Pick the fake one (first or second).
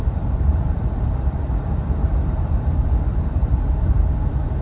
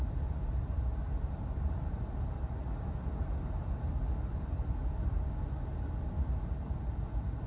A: first